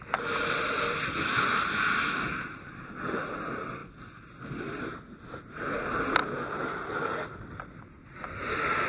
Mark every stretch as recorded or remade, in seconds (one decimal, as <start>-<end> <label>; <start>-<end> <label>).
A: 0.0-1.5 recorded; 1.5-3.2 remade; 3.2-6.2 recorded; 6.2-7.8 remade; 7.8-8.9 recorded